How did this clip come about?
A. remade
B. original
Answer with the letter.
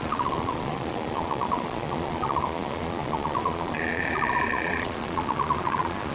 A